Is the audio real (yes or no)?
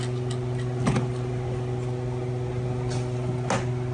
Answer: yes